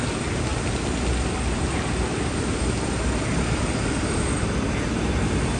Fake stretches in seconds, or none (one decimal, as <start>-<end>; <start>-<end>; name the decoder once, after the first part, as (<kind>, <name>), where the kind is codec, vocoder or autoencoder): none